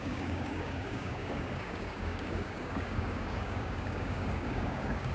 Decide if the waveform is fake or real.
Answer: fake